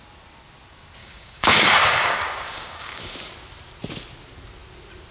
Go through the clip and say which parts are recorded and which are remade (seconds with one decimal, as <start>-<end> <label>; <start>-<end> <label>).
0.0-1.0 recorded; 1.0-3.3 remade; 3.3-5.1 recorded

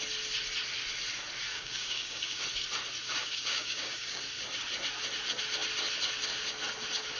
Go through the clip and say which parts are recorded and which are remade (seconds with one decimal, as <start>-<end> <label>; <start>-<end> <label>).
0.0-1.5 recorded; 1.5-2.4 remade; 2.4-3.2 recorded; 3.2-4.2 remade; 4.2-7.2 recorded

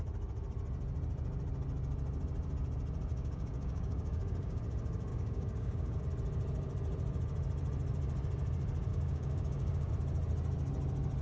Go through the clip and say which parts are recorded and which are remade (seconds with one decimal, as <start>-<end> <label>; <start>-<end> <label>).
0.0-3.1 recorded; 3.1-4.6 remade; 4.6-5.1 recorded; 5.1-6.0 remade; 6.0-8.9 recorded; 8.9-9.9 remade; 9.9-11.2 recorded

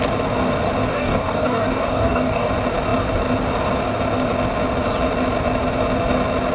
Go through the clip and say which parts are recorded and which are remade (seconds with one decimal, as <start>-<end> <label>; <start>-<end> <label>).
0.0-0.9 recorded; 0.9-2.5 remade; 2.5-6.5 recorded

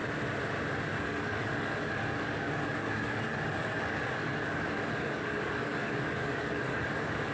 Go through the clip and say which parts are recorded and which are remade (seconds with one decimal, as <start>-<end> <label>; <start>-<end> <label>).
0.0-1.0 recorded; 1.0-7.3 remade

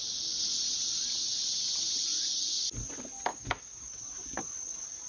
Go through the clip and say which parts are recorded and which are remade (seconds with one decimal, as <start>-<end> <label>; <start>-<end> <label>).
0.0-3.3 recorded; 3.3-3.9 remade; 3.9-5.1 recorded